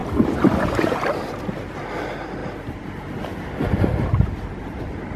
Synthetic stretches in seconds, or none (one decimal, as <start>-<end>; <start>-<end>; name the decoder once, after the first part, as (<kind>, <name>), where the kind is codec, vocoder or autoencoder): none